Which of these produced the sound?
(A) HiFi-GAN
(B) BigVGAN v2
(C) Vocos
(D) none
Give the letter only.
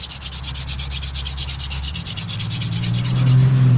D